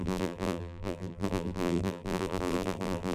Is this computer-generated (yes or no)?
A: yes